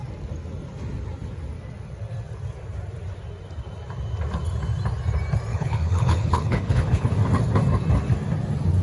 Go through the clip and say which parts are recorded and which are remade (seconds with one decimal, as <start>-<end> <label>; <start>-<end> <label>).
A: 0.0-5.5 recorded; 5.5-7.1 remade; 7.1-8.8 recorded